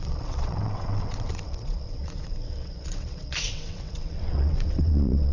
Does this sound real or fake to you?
fake